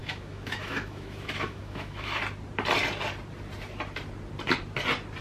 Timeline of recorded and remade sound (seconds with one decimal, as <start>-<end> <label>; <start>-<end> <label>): 0.0-2.2 remade; 2.2-5.2 recorded